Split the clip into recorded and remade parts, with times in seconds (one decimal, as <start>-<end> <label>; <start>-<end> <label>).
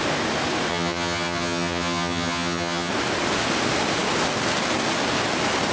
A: 0.0-0.7 recorded; 0.7-2.9 remade; 2.9-5.7 recorded